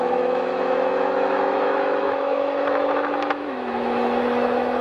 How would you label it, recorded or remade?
remade